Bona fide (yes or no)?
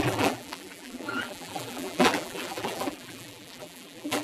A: no